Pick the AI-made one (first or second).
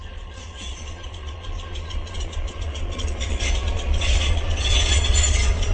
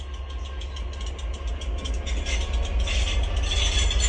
first